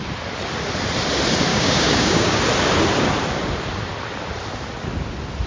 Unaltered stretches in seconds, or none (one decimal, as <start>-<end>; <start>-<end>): 0.0-1.5; 2.4-5.5